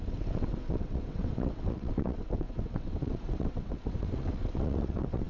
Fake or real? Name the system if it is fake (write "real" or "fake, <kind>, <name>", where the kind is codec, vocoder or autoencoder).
fake, vocoder, WaveNeXt